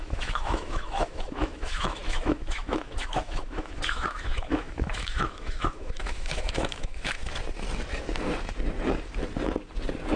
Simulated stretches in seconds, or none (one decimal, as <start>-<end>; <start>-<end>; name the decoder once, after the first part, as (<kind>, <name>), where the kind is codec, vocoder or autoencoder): 0.0-7.2 (autoencoder, DAC-VAE)